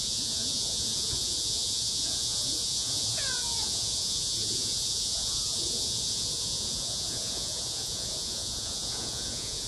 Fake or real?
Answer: fake